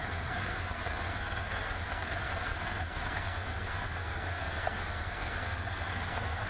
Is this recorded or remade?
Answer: remade